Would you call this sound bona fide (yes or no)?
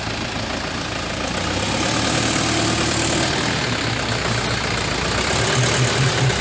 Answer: yes